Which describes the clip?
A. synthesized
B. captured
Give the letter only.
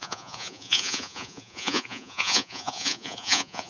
A